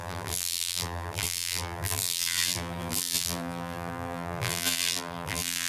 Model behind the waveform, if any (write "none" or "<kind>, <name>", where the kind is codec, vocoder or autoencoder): vocoder, BigVGAN v2